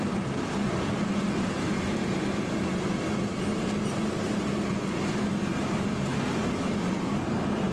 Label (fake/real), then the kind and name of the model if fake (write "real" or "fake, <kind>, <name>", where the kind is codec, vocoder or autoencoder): fake, vocoder, BigVGAN v2